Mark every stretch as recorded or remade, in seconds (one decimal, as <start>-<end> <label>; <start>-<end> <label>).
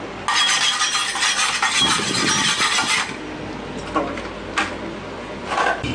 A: 0.0-5.9 recorded